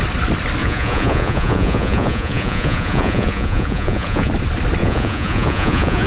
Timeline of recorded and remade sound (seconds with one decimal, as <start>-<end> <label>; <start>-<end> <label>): 0.0-0.6 recorded; 0.6-4.3 remade; 4.3-4.8 recorded; 4.8-6.1 remade